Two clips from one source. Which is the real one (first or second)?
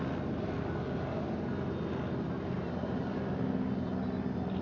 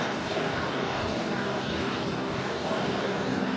first